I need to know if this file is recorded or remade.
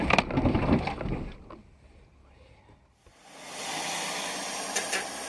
recorded